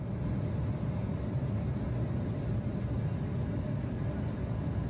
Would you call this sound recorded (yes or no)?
yes